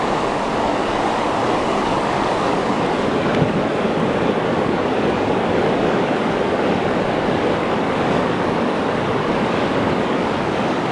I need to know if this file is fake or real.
fake